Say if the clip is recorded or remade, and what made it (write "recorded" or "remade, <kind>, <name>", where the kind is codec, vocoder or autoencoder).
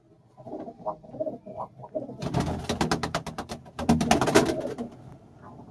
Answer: recorded